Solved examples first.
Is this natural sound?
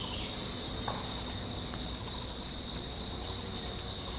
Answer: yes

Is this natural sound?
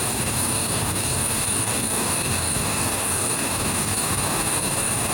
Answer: no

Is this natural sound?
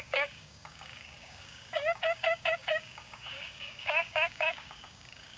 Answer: no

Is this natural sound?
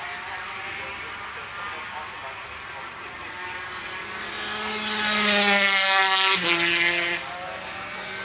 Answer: yes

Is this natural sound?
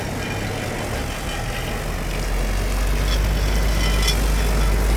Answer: yes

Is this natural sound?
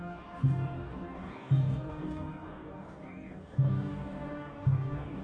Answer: no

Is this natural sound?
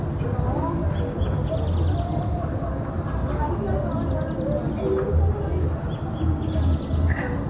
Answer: yes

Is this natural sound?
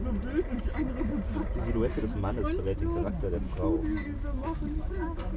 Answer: yes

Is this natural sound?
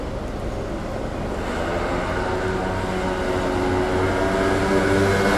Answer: yes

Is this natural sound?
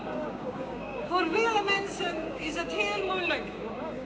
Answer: no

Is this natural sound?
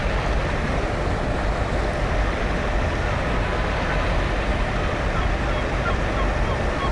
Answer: yes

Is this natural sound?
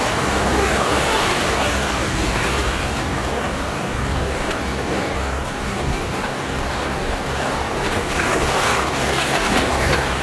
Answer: no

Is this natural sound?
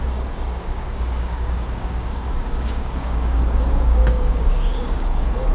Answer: no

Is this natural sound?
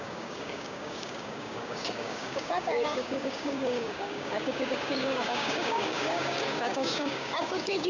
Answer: no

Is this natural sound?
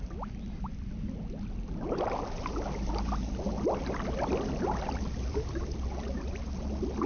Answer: yes